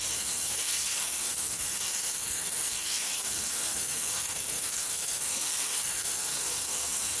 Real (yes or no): no